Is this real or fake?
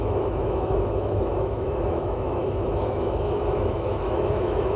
fake